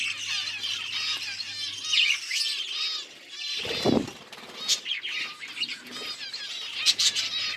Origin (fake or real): real